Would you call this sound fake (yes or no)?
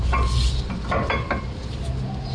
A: no